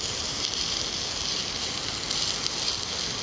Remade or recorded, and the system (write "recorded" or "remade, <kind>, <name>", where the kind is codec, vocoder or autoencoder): recorded